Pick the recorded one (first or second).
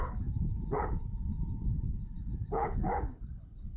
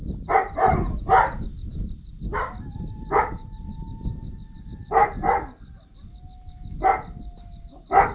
second